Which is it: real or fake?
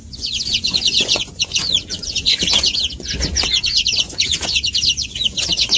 fake